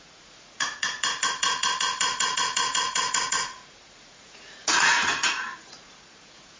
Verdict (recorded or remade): remade